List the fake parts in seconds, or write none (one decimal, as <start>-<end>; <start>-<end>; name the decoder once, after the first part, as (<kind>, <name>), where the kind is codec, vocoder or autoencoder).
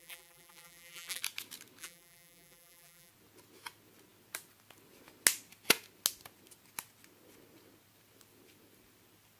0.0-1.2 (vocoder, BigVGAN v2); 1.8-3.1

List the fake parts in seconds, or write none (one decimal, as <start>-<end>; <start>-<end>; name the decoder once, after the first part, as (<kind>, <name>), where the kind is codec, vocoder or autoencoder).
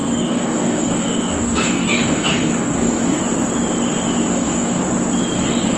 0.0-3.2 (codec, DAC); 4.3-4.8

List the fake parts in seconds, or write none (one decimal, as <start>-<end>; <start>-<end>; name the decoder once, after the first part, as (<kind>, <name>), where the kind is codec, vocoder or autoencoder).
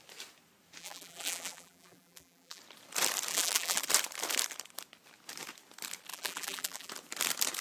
0.8-2.6 (vocoder, BigVGAN v2); 3.3-3.8; 6.1-6.9